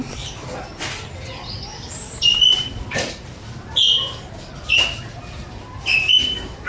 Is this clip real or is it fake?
real